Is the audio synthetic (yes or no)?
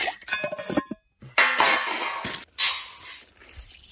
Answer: no